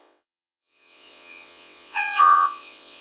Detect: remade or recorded remade